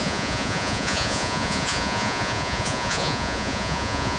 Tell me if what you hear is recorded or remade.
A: remade